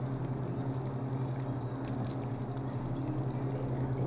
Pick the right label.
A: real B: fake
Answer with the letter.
A